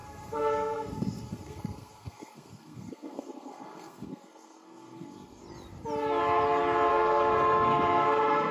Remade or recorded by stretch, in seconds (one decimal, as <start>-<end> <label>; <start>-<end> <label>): 0.0-5.4 remade; 5.4-6.9 recorded; 6.9-8.5 remade